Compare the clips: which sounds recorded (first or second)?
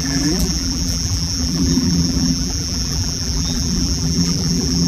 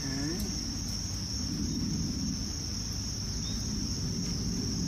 second